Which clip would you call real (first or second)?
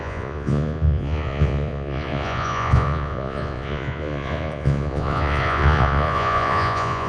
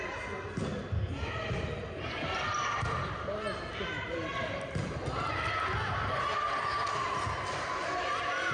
second